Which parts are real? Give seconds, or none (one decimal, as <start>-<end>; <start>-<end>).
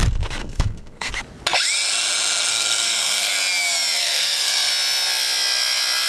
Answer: 0.0-0.4; 1.1-2.5; 3.3-4.0; 4.7-6.1